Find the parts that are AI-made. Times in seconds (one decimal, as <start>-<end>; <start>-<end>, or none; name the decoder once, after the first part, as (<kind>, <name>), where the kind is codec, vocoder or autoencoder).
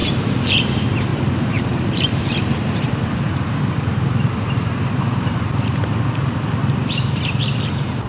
0.0-0.7 (vocoder, BigVGAN v2); 1.1-5.4; 6.6-7.4